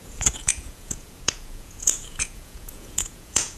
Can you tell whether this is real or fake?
fake